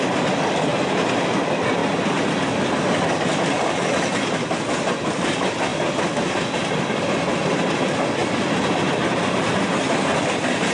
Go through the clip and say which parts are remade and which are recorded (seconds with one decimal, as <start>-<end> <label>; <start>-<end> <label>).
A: 0.0-0.7 remade; 0.7-1.3 recorded; 1.3-1.8 remade; 1.8-2.8 recorded; 2.8-5.7 remade; 5.7-6.6 recorded; 6.6-10.7 remade